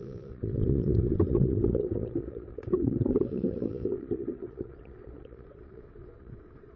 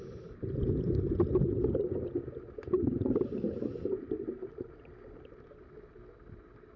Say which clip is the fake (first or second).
first